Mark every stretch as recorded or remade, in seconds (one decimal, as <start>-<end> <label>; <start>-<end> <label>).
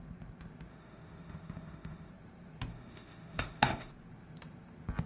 0.0-0.7 recorded; 0.7-2.1 remade; 2.1-2.7 recorded; 2.7-3.9 remade; 3.9-5.1 recorded